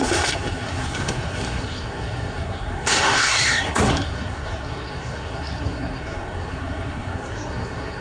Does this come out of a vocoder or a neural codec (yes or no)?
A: yes